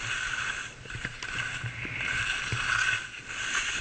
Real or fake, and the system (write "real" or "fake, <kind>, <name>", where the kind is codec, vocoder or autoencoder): real